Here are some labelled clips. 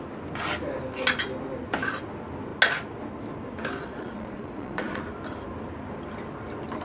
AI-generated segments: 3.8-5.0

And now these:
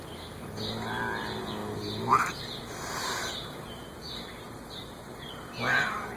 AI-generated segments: none

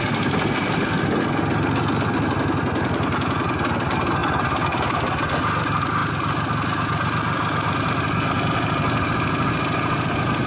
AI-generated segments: none

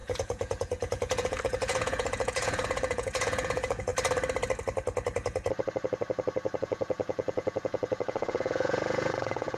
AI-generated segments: 0.0-3.9; 6.6-9.6

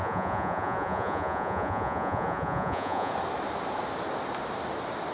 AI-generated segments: 0.0-3.1

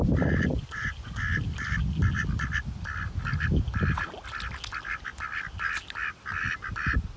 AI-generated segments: 0.5-1.2

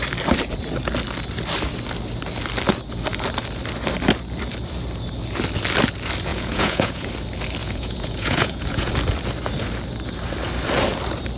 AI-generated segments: 6.3-7.1; 7.6-8.9

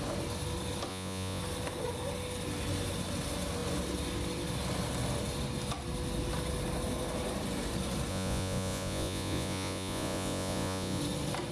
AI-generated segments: 0.9-1.4; 8.1-11.0